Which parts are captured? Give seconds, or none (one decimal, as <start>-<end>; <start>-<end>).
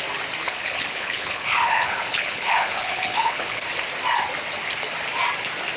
0.0-0.4; 3.6-5.8